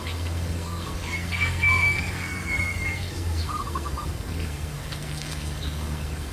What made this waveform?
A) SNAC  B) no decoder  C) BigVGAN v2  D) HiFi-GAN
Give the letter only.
A